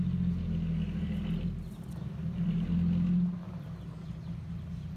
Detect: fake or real real